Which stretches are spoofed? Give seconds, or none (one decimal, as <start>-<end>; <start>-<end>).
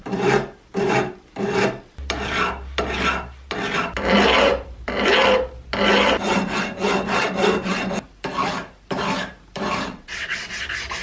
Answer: 9.9-10.5